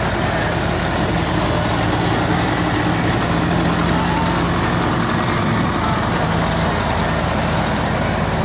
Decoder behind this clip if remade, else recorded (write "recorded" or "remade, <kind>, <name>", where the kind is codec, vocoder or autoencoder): recorded